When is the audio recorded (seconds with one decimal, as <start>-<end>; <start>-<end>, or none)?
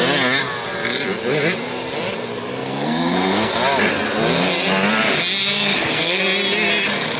0.0-2.6; 3.5-5.4; 6.2-7.2